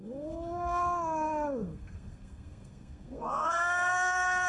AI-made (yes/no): yes